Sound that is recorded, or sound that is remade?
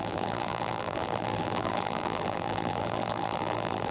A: remade